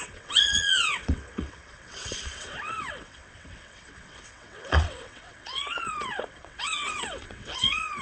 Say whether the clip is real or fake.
fake